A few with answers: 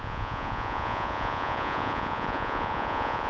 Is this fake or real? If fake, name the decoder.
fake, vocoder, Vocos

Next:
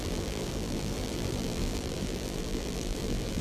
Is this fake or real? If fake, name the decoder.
fake, vocoder, BigVGAN v2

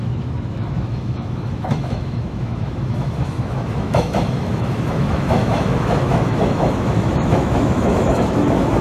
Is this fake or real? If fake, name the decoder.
fake, autoencoder, DAC-VAE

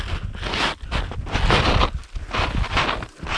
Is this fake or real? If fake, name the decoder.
real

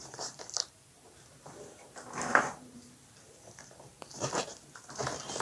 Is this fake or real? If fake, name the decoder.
fake, vocoder, BigVGAN v2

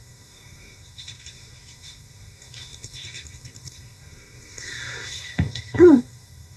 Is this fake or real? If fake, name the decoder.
fake, codec, SNAC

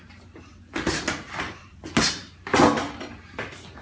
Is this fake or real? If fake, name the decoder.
real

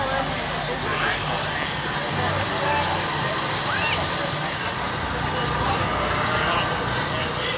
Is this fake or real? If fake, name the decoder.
real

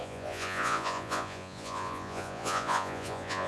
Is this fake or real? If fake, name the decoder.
fake, vocoder, Vocos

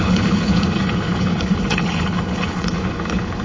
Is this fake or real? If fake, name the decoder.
fake, codec, HILCodec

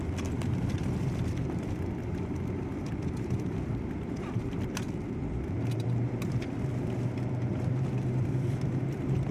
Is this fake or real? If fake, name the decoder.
fake, vocoder, BigVGAN v2